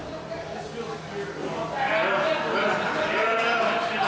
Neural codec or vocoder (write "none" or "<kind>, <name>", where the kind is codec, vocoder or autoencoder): none